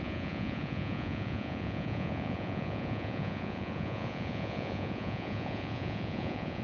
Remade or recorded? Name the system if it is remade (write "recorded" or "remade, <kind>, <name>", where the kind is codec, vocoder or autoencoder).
remade, vocoder, Vocos